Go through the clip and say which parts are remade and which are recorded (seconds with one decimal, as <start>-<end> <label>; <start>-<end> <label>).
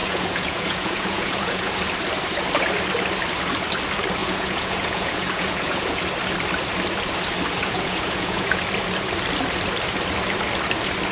0.0-1.7 remade; 1.7-4.2 recorded; 4.2-6.0 remade; 6.0-7.6 recorded; 7.6-8.6 remade; 8.6-11.1 recorded